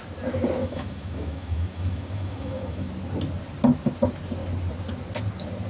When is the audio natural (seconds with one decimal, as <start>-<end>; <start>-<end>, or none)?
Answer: 0.0-0.6; 2.9-5.7